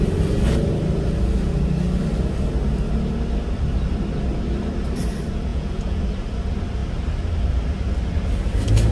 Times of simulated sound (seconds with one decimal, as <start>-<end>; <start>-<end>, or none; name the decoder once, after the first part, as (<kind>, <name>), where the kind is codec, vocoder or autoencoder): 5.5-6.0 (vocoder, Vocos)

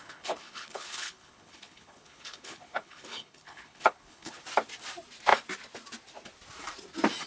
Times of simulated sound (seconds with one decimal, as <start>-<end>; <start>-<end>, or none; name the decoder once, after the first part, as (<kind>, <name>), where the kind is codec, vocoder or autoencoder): 0.0-4.4 (codec, HILCodec)

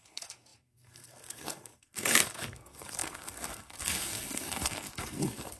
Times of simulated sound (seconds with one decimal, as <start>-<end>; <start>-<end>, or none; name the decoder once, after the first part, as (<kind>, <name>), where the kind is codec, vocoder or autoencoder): 0.0-5.6 (codec, SNAC)

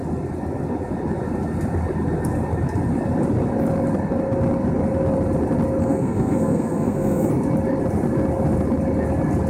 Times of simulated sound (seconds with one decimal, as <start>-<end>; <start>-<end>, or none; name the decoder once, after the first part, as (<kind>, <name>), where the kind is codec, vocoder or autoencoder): 5.8-7.3 (codec, SNAC)

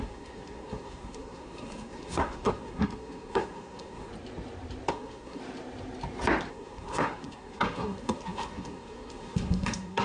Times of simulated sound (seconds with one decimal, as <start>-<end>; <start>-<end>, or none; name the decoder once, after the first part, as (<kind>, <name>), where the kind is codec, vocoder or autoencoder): 0.0-4.1 (codec, SNAC); 4.9-5.4; 6.5-10.0

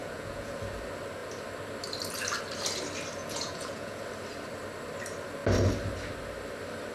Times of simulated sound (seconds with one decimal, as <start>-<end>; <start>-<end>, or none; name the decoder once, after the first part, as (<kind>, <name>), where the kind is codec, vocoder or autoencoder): 0.0-0.6 (vocoder, Vocos); 3.2-4.0

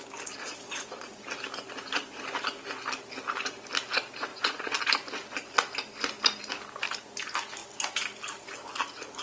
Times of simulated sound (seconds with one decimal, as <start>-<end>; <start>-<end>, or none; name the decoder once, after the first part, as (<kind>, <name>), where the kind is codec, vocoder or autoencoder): 0.4-1.2 (vocoder, Vocos); 4.3-4.8

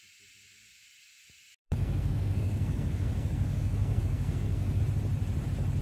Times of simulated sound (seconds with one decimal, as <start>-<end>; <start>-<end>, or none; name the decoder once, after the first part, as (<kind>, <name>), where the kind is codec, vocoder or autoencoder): 1.6-4.8 (codec, SNAC)